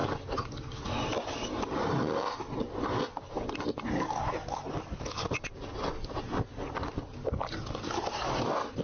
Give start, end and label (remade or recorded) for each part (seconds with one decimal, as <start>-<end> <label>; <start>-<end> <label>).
0.0-8.8 recorded